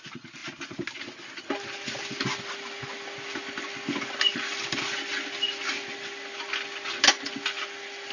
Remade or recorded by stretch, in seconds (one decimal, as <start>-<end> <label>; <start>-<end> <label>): 0.0-8.1 recorded